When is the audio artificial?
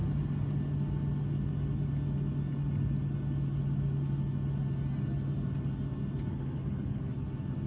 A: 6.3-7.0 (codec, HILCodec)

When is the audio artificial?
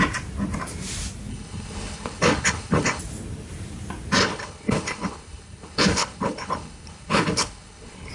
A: 1.3-3.0 (codec, HILCodec); 4.2-8.1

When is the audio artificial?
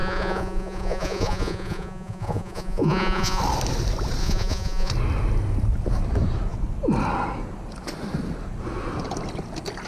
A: 0.0-3.4 (vocoder, Vocos); 4.2-4.9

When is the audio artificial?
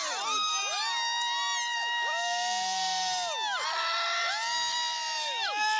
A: none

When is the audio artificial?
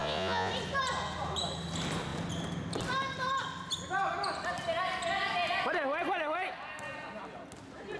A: 0.0-0.5 (vocoder, Vocos)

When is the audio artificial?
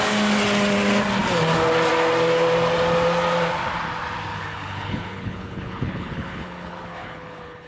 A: 4.3-7.7 (codec, HILCodec)